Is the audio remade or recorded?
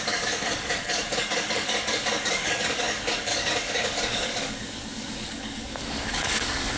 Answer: remade